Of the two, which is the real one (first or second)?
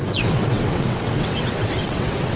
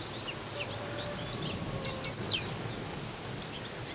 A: second